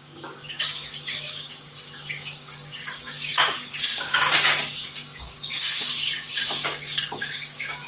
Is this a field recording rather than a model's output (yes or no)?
no